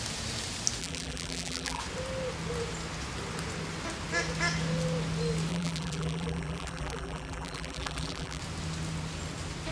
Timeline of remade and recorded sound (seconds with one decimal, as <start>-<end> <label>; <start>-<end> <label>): 0.0-0.8 recorded; 0.8-1.8 remade; 1.8-5.5 recorded; 5.5-8.4 remade; 8.4-9.7 recorded